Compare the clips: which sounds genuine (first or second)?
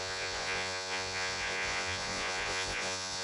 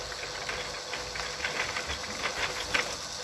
second